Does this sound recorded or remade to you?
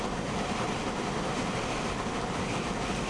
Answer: recorded